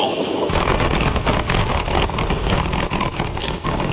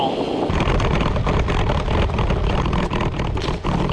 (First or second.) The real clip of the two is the second